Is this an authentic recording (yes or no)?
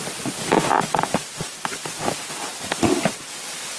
yes